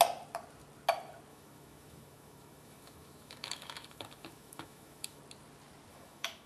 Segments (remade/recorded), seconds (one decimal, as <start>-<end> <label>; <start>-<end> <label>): 0.0-1.3 recorded; 1.3-5.2 remade; 5.2-5.9 recorded; 5.9-6.5 remade